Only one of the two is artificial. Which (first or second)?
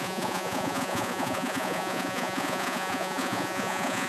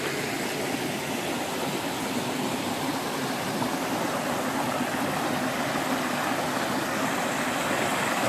first